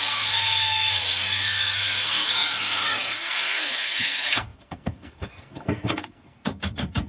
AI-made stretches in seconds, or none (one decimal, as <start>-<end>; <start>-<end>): 0.0-7.1